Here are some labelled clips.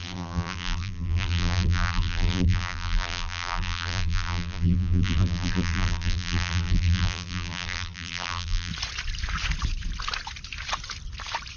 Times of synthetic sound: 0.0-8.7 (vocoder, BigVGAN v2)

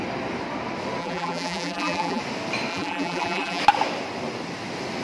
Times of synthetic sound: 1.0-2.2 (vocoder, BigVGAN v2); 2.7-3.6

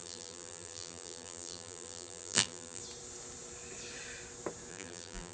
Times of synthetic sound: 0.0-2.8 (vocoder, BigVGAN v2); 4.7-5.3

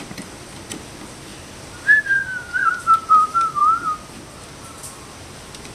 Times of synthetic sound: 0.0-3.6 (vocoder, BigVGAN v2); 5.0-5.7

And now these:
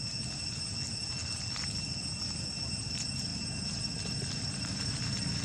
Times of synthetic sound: 3.3-5.0 (vocoder, BigVGAN v2)

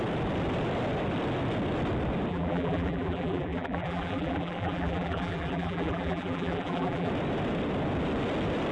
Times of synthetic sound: 2.3-7.1 (vocoder, BigVGAN v2)

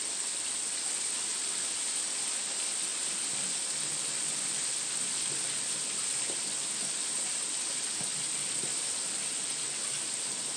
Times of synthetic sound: 2.9-4.7 (vocoder, BigVGAN v2); 8.1-9.5

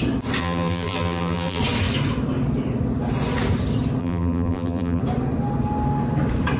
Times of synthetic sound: 0.4-1.6 (vocoder, BigVGAN v2); 4.0-5.0